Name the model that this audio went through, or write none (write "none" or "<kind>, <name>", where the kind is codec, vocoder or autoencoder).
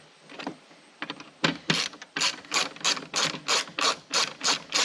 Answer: none